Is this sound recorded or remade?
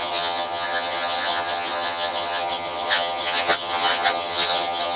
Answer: remade